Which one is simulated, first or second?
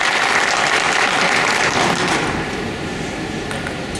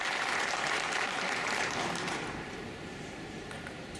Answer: second